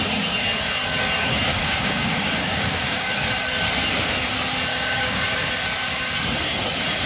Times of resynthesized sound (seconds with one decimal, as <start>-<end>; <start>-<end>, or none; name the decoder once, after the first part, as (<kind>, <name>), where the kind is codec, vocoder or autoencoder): 1.5-3.1 (codec, DAC); 4.7-5.5